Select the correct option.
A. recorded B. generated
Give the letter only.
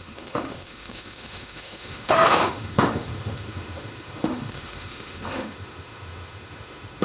B